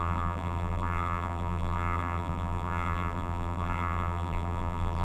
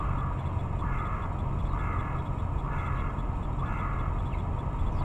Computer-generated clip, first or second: first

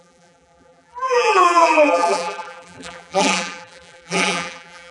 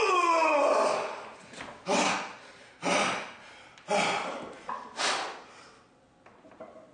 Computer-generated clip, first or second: first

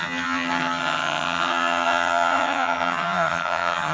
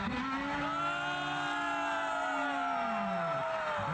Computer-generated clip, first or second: first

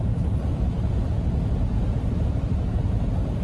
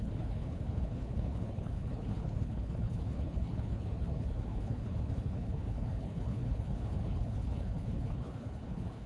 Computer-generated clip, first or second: second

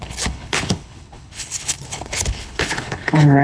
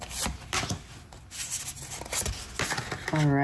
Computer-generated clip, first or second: first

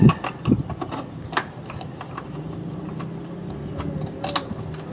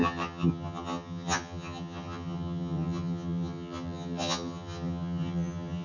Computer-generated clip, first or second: second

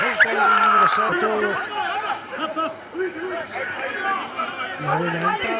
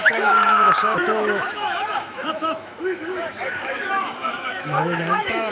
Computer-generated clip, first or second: second